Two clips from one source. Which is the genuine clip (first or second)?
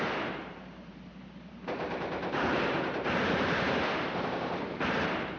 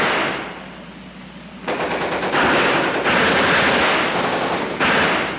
second